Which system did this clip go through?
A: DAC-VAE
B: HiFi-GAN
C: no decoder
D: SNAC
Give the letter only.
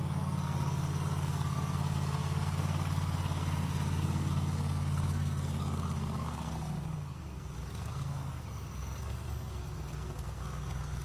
D